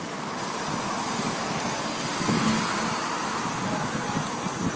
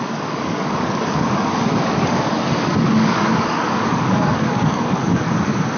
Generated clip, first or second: second